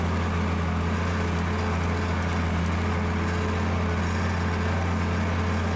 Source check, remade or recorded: recorded